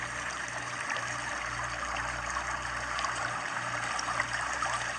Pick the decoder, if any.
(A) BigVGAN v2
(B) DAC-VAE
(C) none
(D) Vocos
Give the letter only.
A